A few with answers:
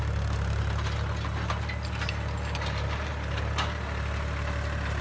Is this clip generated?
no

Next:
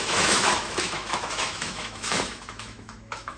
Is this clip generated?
yes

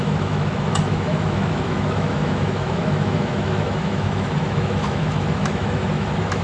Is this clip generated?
yes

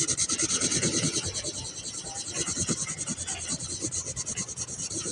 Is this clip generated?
no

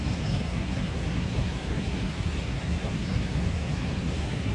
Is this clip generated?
yes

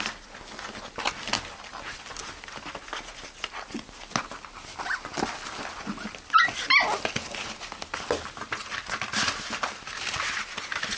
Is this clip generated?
no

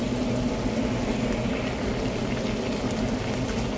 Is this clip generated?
no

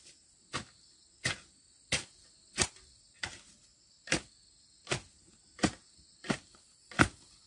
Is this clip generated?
no